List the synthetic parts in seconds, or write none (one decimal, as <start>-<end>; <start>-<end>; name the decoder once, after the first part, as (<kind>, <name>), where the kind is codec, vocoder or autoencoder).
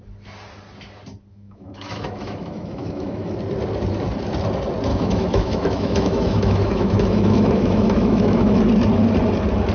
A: 1.3-3.3 (autoencoder, DAC-VAE); 4.9-8.6